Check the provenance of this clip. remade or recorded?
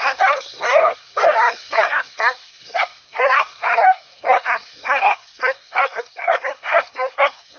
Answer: remade